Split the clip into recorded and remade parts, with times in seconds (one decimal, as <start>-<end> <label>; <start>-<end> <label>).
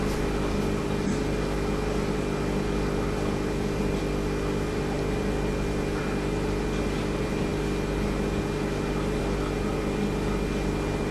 0.0-11.1 recorded